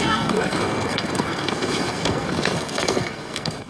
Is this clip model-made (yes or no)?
yes